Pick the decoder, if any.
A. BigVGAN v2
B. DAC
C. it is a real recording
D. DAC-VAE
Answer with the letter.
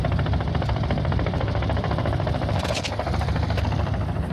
A